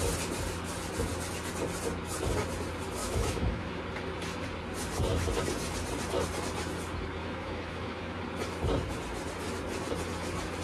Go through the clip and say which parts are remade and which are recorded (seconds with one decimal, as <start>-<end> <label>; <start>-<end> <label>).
0.0-3.0 recorded; 3.0-3.8 remade; 3.8-7.2 recorded; 7.2-8.2 remade; 8.2-10.6 recorded